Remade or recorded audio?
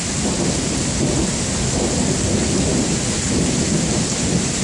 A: recorded